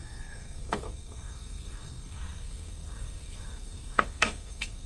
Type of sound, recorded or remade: remade